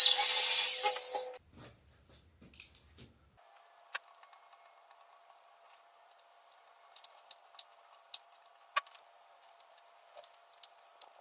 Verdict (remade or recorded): recorded